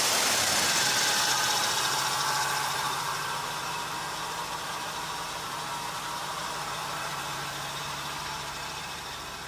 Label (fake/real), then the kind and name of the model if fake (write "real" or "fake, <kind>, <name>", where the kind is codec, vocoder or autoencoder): real